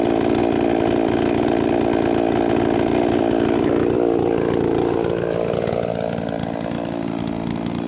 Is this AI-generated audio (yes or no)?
no